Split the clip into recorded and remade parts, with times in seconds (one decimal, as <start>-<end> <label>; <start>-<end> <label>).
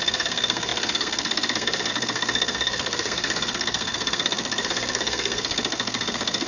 0.0-6.5 remade